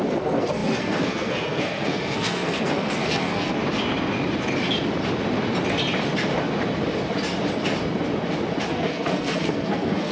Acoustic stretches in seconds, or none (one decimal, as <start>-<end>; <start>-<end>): 3.6-8.7